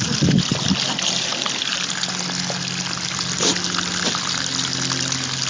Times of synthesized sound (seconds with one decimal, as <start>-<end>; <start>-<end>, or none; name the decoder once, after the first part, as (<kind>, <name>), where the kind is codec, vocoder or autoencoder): none